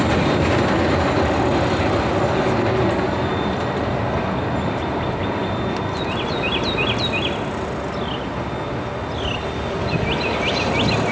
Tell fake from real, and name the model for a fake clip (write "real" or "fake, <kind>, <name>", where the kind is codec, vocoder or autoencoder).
real